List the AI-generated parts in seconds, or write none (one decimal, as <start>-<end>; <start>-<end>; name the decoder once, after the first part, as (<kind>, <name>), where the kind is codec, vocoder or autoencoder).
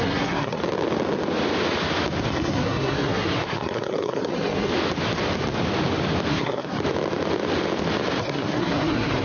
0.0-0.6 (codec, SNAC); 2.3-4.7; 6.3-6.8; 8.2-9.2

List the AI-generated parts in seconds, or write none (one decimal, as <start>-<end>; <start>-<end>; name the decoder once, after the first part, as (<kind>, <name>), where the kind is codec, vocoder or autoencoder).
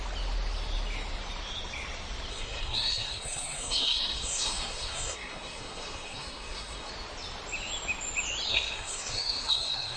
2.3-6.9 (codec, SNAC); 8.5-10.0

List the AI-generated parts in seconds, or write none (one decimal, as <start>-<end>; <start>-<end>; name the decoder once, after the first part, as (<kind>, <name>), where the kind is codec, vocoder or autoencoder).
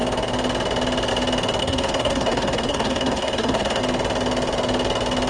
1.6-3.8 (codec, SNAC)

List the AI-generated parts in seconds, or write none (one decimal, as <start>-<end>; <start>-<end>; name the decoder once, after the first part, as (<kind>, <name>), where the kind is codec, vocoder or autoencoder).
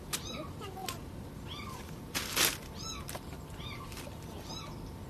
none